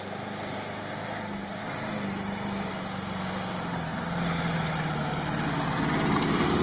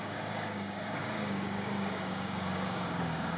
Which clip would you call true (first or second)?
first